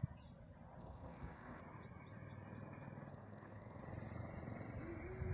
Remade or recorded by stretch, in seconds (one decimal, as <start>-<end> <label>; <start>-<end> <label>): 0.0-0.8 recorded; 0.8-1.6 remade; 1.6-3.1 recorded; 3.1-3.8 remade; 3.8-5.3 recorded